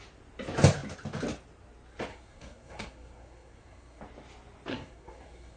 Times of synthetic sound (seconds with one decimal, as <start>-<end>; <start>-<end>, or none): 2.1-4.0; 4.7-5.6